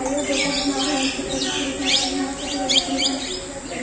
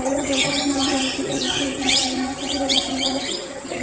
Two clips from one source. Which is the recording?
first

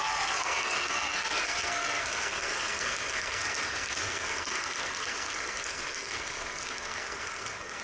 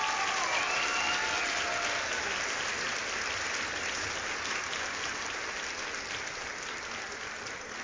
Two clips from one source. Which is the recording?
second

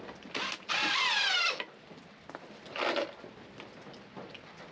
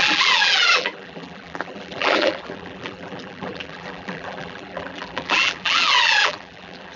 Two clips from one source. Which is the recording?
first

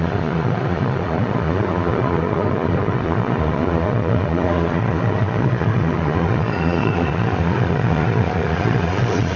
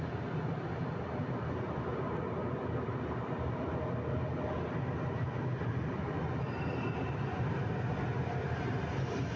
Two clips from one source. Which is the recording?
second